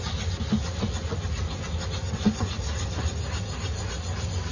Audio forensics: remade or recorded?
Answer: recorded